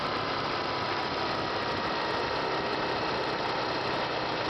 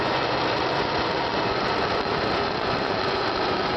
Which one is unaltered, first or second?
first